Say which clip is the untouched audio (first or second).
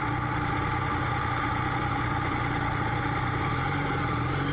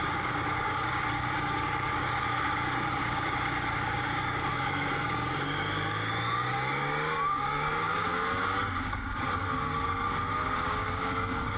first